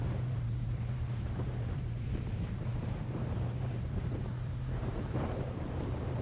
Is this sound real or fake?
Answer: fake